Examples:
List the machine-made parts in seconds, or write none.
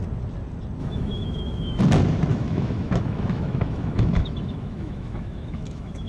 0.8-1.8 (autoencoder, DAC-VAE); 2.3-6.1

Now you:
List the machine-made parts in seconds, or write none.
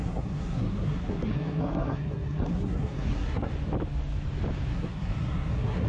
0.0-3.5 (codec, SNAC); 4.7-5.9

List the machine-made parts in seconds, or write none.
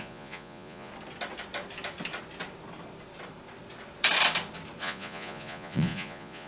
0.0-0.9 (vocoder, Vocos); 4.8-6.5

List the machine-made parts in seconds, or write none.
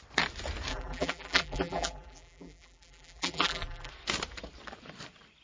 0.7-3.9 (vocoder, BigVGAN v2)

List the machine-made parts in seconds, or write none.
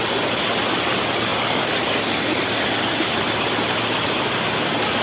none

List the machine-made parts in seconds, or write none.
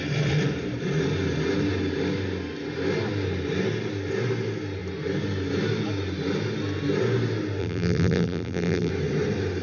7.6-8.9 (vocoder, BigVGAN v2)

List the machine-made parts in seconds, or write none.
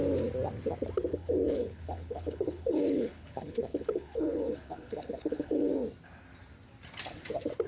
1.1-5.7 (codec, HILCodec)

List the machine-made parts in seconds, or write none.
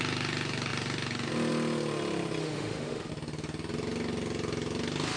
2.4-3.1 (autoencoder, DAC-VAE)